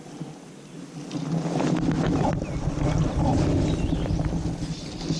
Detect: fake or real real